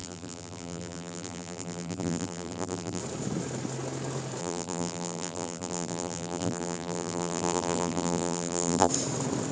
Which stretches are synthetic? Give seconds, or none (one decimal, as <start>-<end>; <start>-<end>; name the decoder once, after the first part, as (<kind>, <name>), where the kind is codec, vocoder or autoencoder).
0.0-3.0 (vocoder, BigVGAN v2); 4.4-8.9